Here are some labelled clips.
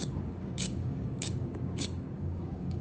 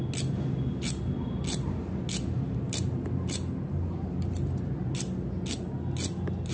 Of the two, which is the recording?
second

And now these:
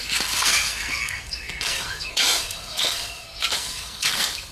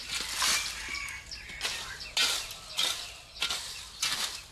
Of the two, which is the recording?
second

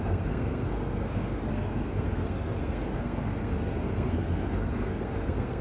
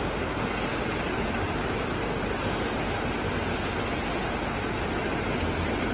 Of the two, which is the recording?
second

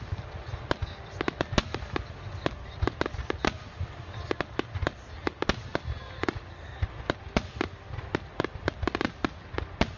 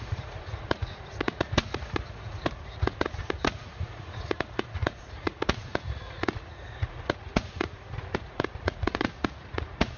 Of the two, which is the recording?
first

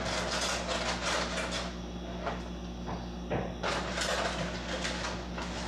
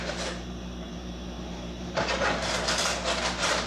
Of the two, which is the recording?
first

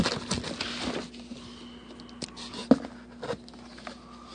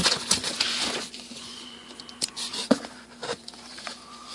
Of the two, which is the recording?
first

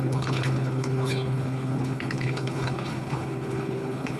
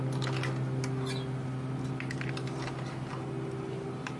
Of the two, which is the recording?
second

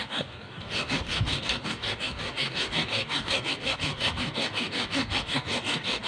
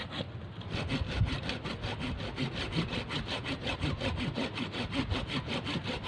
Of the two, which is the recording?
second